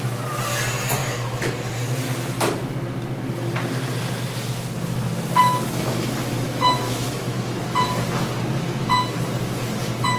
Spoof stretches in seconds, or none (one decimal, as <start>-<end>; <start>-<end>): 1.0-1.7; 5.4-7.6

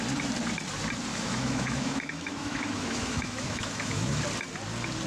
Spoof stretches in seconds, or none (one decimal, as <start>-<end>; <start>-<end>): 1.1-4.2

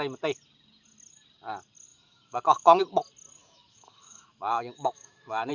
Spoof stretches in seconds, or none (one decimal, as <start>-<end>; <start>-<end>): 1.9-2.8; 3.4-5.5

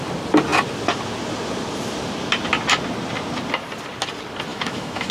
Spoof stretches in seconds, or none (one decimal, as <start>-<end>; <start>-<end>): 4.5-5.1